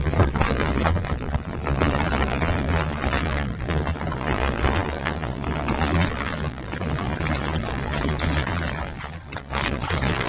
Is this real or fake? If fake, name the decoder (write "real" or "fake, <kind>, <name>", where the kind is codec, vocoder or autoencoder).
fake, vocoder, Vocos